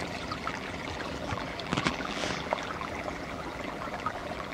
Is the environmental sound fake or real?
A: fake